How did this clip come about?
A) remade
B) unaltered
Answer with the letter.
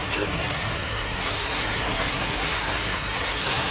A